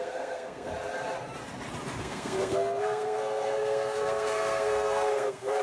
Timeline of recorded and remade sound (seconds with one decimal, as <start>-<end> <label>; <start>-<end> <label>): 0.0-0.7 remade; 0.7-2.0 recorded; 2.0-5.6 remade